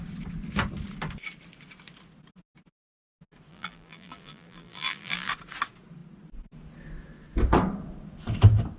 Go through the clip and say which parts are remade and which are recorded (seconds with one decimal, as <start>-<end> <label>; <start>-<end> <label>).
0.0-3.5 recorded; 3.5-5.3 remade; 5.3-8.8 recorded